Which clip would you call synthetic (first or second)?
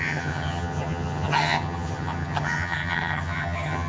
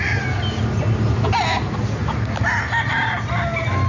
first